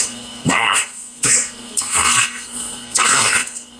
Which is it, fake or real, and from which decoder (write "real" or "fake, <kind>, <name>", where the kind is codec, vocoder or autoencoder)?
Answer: fake, codec, SNAC